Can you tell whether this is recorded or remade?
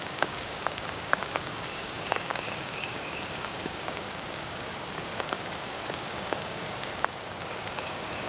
remade